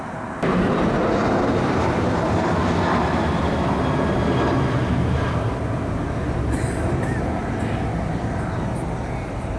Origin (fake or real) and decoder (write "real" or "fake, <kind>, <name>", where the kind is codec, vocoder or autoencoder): real